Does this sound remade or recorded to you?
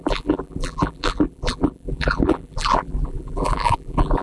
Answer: remade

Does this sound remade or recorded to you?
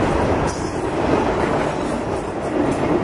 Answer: recorded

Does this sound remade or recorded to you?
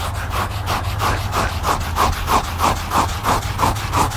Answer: recorded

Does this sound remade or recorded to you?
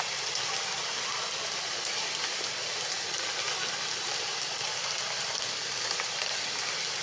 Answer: recorded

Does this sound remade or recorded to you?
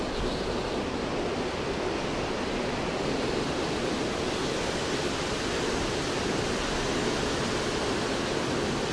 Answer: recorded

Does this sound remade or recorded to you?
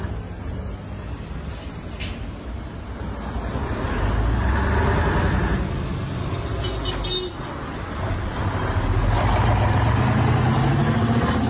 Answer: recorded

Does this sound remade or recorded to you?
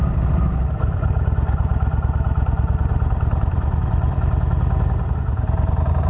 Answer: remade